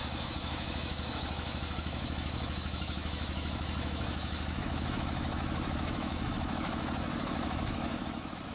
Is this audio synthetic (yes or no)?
yes